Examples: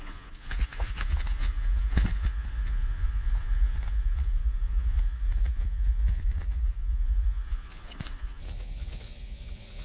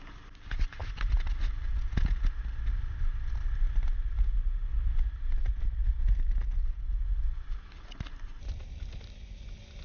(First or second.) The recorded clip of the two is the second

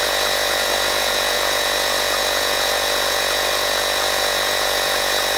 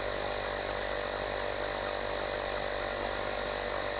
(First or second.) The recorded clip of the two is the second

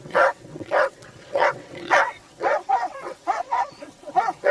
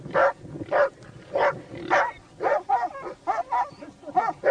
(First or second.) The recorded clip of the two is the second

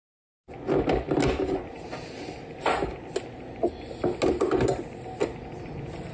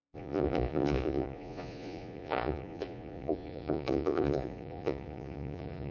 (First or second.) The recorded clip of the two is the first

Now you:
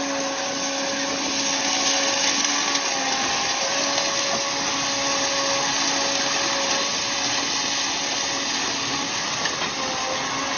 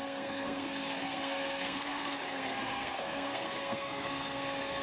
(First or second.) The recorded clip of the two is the first